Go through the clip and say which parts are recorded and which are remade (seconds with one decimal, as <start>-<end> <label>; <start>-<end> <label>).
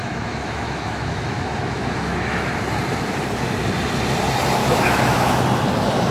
0.0-2.5 remade; 2.5-4.6 recorded; 4.6-5.4 remade; 5.4-6.1 recorded